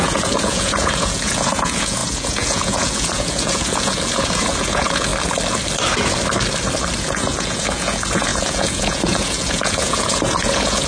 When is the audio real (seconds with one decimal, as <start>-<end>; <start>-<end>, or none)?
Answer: 5.1-7.0